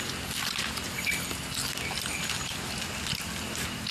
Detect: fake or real real